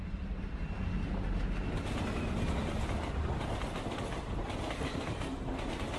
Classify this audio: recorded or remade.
recorded